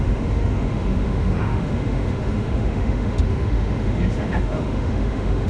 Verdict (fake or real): fake